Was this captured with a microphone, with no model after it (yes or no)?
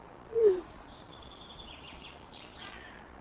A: no